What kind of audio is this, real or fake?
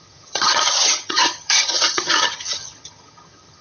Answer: fake